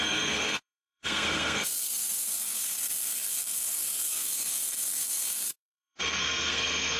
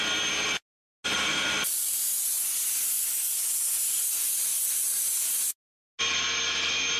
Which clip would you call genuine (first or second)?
second